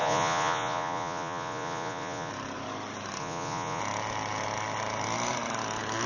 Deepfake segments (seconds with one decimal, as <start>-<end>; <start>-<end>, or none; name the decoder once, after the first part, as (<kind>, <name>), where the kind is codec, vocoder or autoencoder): 0.0-2.3 (vocoder, Vocos); 3.2-3.8